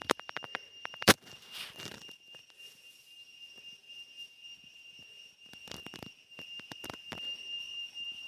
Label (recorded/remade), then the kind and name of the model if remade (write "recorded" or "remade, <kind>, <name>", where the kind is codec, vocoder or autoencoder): remade, vocoder, BigVGAN v2